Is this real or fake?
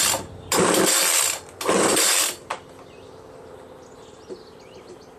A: real